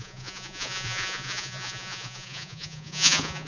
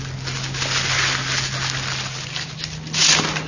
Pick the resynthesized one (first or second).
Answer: first